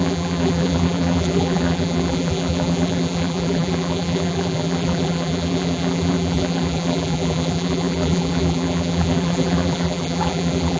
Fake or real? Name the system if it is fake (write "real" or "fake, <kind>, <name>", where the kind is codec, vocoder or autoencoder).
fake, vocoder, BigVGAN v2